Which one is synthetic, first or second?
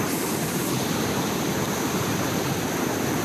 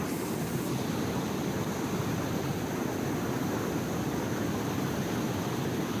first